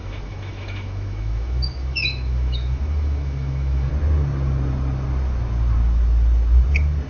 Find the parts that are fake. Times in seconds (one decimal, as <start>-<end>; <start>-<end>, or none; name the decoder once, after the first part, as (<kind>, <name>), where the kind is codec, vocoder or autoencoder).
0.0-3.9 (autoencoder, DAC-VAE)